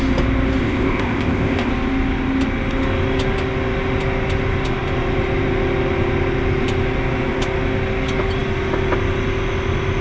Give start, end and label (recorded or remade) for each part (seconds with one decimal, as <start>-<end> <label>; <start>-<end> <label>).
0.0-0.6 recorded; 0.6-1.7 remade; 1.7-10.0 recorded